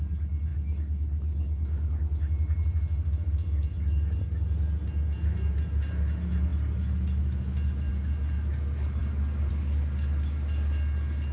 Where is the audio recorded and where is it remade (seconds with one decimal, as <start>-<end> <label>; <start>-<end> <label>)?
0.0-11.3 recorded